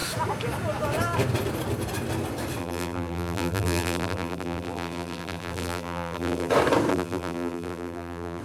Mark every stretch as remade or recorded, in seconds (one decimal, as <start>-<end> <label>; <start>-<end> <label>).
0.0-2.6 recorded; 2.6-6.5 remade; 6.5-6.9 recorded; 6.9-8.4 remade